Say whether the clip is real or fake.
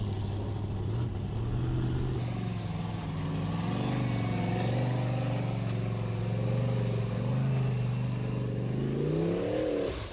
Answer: real